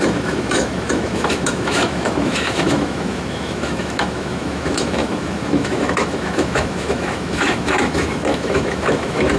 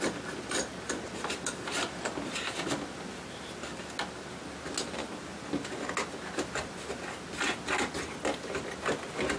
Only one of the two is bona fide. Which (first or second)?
second